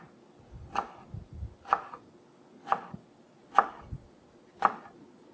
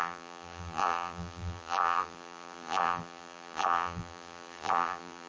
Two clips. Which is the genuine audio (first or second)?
first